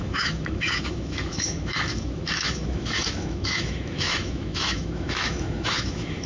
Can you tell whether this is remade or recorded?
remade